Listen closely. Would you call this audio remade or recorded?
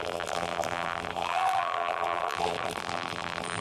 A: remade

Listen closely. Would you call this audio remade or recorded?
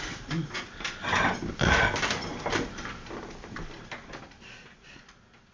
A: recorded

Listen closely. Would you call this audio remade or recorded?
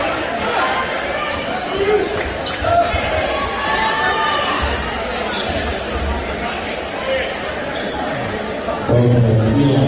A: recorded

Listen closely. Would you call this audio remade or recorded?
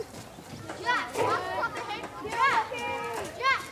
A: recorded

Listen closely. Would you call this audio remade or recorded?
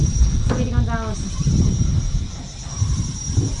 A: recorded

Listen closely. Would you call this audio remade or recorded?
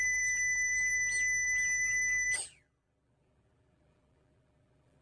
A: remade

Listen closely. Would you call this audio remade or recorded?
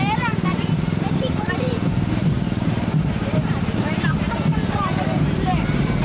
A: remade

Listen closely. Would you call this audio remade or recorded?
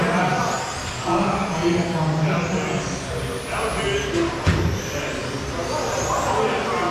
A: recorded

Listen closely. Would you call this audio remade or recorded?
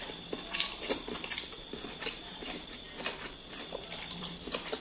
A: remade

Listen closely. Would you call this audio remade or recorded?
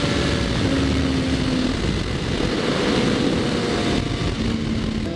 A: recorded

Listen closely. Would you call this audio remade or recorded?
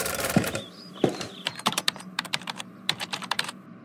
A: remade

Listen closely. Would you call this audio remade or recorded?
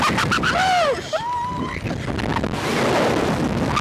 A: recorded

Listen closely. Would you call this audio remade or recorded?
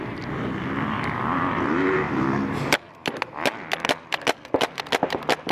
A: recorded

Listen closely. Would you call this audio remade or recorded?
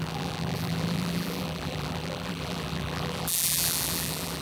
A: remade